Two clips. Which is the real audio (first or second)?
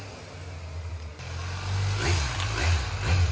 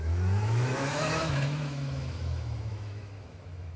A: first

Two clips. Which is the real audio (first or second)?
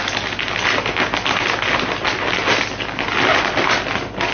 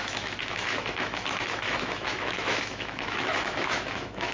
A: first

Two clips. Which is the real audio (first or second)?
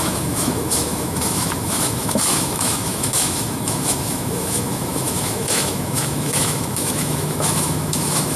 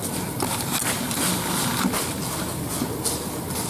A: second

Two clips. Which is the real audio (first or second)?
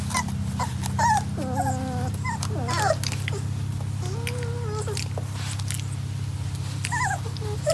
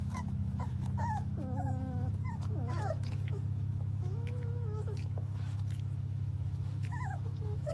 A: first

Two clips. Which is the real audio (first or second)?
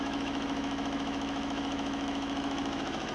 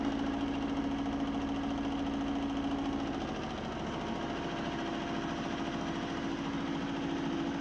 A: second